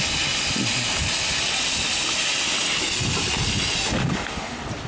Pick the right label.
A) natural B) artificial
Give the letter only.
A